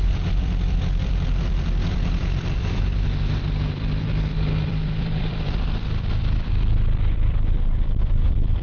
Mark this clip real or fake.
fake